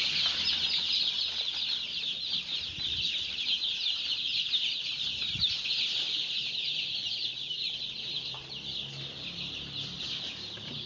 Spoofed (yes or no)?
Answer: no